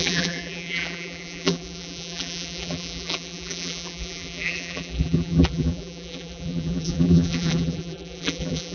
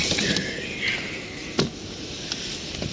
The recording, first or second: second